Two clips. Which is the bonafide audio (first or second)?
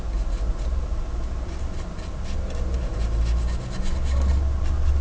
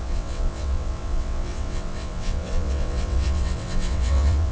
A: first